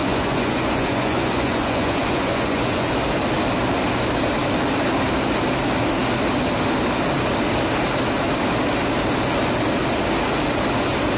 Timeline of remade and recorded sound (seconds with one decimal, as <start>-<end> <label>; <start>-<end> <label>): 0.0-2.9 remade; 2.9-11.2 recorded